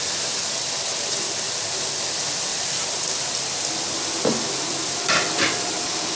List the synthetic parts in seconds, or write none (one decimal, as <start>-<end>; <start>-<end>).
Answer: 2.5-3.6